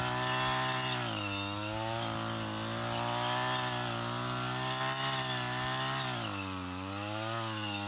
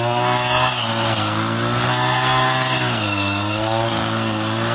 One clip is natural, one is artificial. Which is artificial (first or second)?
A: second